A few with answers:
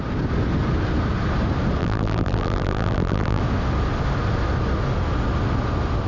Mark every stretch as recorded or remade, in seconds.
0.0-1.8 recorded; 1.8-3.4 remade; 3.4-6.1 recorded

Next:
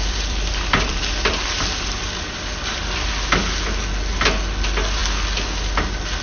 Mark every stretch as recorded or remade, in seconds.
0.0-3.1 remade; 3.1-6.2 recorded

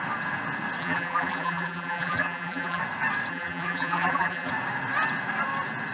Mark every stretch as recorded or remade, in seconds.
0.0-0.8 recorded; 0.8-2.8 remade; 2.8-3.3 recorded; 3.3-4.5 remade; 4.5-5.9 recorded

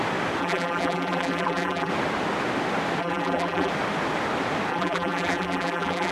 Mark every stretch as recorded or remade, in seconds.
0.0-0.4 recorded; 0.4-1.9 remade; 1.9-3.0 recorded; 3.0-3.7 remade; 3.7-4.7 recorded; 4.7-6.1 remade

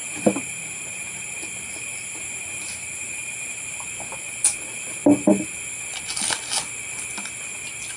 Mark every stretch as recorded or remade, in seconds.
0.0-3.8 remade; 3.8-8.0 recorded

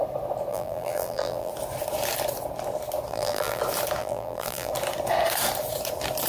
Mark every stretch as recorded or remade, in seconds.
0.0-0.5 recorded; 0.5-1.5 remade; 1.5-3.1 recorded; 3.1-3.6 remade; 3.6-4.0 recorded; 4.0-4.7 remade; 4.7-6.3 recorded